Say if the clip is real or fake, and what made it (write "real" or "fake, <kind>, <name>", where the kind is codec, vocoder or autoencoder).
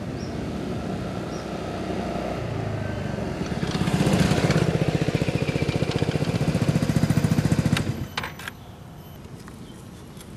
real